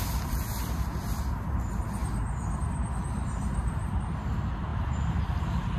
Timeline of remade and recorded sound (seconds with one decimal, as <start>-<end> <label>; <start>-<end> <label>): 0.0-4.7 recorded; 4.7-5.2 remade; 5.2-5.8 recorded